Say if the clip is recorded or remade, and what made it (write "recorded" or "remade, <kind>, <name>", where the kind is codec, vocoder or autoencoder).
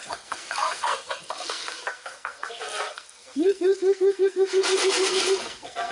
remade, codec, SNAC